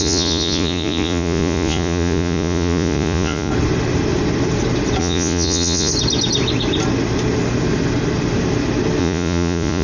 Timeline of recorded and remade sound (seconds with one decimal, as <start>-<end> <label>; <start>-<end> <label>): 0.0-3.5 remade; 3.5-5.0 recorded; 5.0-5.9 remade; 5.9-9.0 recorded; 9.0-9.8 remade